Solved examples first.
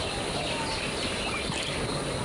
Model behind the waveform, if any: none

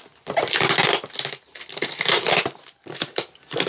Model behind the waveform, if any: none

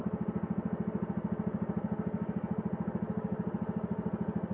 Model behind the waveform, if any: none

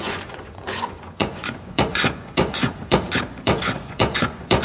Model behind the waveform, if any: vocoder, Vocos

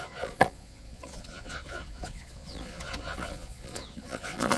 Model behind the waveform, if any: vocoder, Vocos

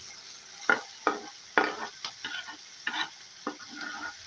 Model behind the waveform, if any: none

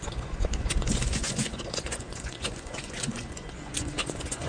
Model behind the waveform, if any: vocoder, Vocos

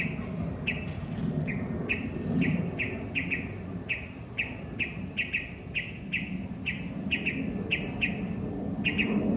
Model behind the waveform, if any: none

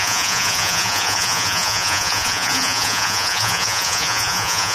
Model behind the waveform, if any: vocoder, Vocos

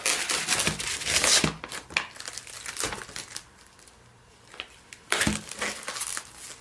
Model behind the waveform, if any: none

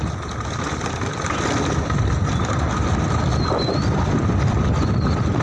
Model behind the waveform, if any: none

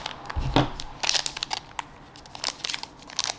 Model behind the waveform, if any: none